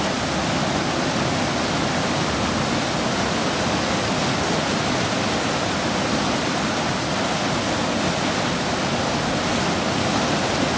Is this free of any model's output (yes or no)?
yes